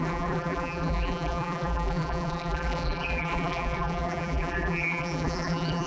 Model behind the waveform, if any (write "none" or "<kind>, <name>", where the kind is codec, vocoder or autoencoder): vocoder, BigVGAN v2